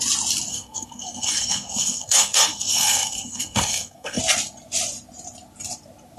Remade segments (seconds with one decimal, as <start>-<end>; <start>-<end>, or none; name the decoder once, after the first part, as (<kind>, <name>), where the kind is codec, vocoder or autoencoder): 0.5-4.2 (codec, SNAC)